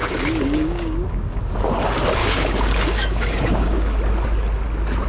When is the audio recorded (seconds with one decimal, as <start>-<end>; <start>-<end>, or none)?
1.5-2.2; 4.0-5.1

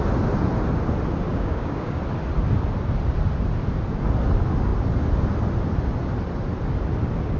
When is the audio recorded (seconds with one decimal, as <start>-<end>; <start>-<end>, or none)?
0.0-1.3; 2.0-7.4

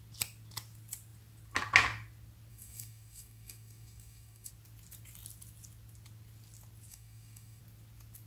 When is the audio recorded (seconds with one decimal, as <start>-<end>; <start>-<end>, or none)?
0.0-2.5; 4.5-6.9; 7.6-8.3

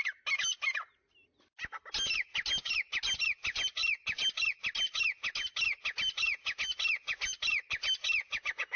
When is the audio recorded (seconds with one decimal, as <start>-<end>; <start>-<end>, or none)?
0.0-8.8

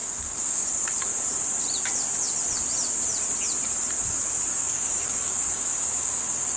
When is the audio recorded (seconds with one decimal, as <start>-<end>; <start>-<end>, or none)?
0.7-4.5

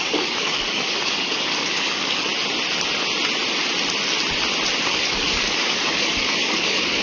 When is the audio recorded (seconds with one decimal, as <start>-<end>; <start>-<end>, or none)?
2.3-4.9

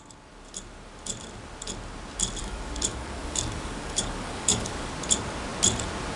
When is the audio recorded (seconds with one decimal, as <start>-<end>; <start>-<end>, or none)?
0.0-2.4; 4.9-6.2